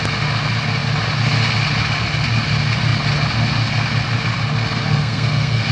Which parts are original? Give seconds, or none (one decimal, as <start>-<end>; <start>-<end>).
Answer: 0.0-4.8